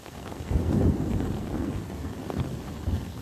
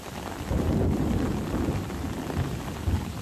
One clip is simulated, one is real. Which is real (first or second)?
second